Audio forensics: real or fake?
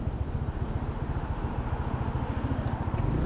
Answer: real